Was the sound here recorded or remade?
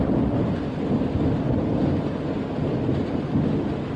recorded